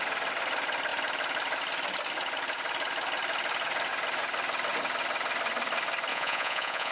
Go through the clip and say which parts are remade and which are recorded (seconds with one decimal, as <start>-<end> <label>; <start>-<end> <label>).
0.0-6.1 recorded; 6.1-6.9 remade